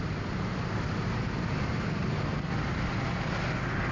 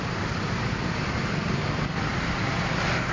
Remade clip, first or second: second